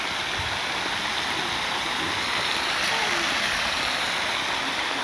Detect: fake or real real